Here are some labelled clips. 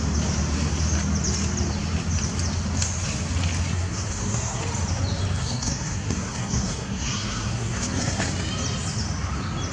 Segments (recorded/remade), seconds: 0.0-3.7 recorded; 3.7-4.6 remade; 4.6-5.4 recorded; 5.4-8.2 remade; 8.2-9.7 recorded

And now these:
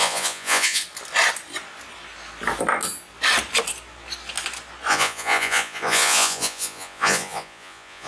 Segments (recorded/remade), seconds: 0.0-0.8 remade; 0.8-4.9 recorded; 4.9-8.1 remade

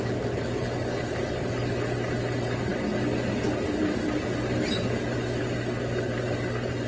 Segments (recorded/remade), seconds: 0.0-6.9 recorded

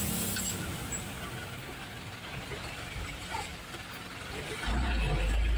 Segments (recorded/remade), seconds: 0.0-0.5 recorded; 0.5-1.1 remade; 1.1-5.6 recorded